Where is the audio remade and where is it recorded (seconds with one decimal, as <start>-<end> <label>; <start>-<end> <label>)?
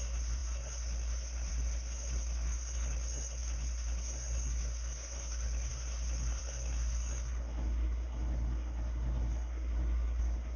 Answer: 0.0-10.6 remade